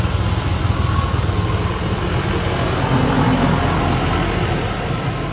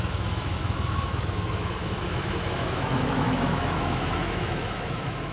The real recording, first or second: first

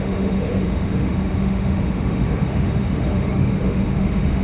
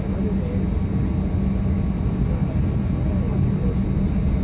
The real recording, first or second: second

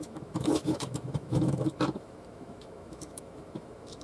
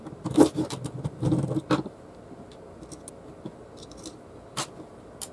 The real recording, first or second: second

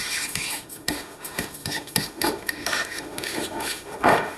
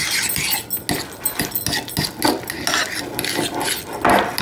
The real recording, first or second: second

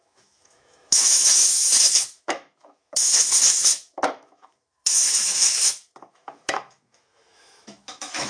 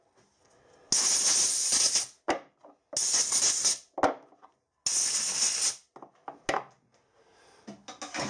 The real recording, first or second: second